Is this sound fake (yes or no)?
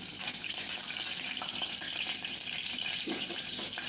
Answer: yes